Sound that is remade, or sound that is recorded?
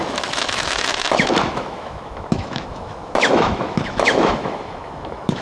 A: remade